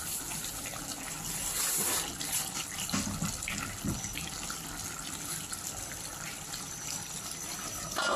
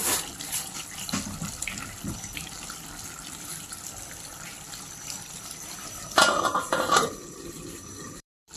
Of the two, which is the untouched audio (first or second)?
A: first